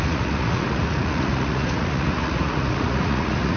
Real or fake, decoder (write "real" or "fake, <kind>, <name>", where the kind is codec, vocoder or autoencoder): fake, vocoder, Vocos